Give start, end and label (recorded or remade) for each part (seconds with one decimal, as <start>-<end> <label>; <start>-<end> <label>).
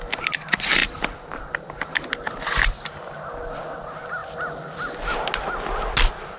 0.0-6.4 recorded